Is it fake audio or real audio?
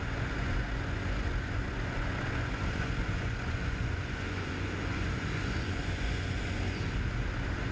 fake